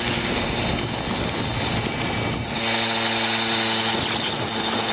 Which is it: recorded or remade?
recorded